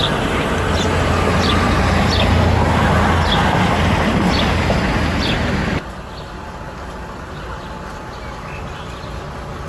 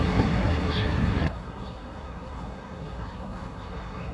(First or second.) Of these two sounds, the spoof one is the second